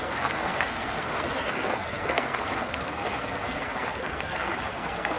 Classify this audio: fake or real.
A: fake